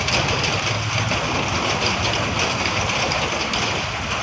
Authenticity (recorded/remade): recorded